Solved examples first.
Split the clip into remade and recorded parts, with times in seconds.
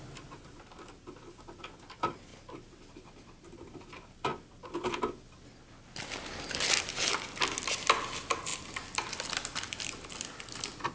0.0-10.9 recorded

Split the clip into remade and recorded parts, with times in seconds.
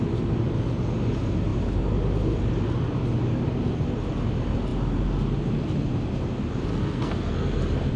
0.0-6.7 recorded; 6.7-7.6 remade; 7.6-8.0 recorded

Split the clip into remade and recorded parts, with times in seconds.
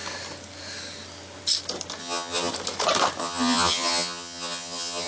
0.0-2.0 recorded; 2.0-2.5 remade; 2.5-3.2 recorded; 3.2-5.1 remade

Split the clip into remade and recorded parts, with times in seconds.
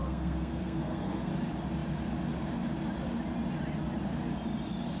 0.0-1.3 remade; 1.3-5.0 recorded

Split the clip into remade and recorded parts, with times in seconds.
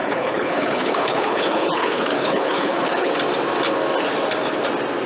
0.0-3.1 remade; 3.1-5.1 recorded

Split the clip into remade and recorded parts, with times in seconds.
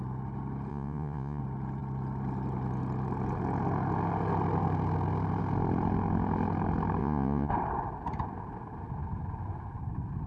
0.0-0.7 recorded; 0.7-1.4 remade; 1.4-7.0 recorded; 7.0-7.5 remade; 7.5-10.3 recorded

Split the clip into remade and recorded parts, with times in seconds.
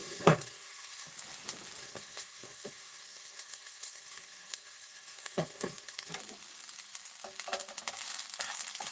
0.0-1.1 remade; 1.1-1.8 recorded; 1.8-6.1 remade; 6.1-8.9 recorded